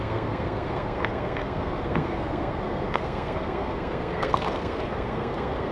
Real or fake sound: fake